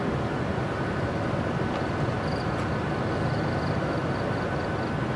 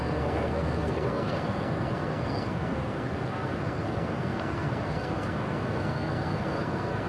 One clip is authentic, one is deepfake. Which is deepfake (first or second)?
second